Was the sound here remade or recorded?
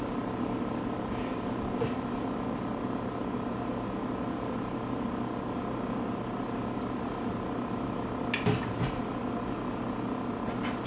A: recorded